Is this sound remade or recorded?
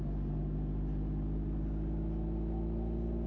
recorded